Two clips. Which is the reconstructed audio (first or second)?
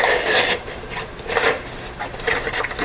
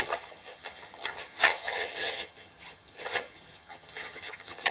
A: second